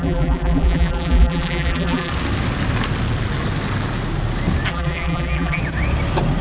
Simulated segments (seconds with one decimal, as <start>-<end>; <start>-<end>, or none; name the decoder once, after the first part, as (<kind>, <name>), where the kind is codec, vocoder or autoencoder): 0.0-2.1 (vocoder, BigVGAN v2); 4.7-5.6